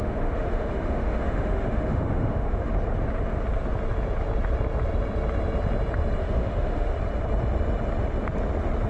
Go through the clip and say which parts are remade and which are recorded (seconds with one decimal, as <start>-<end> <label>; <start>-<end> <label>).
0.0-2.7 remade; 2.7-6.2 recorded; 6.2-6.9 remade; 6.9-8.9 recorded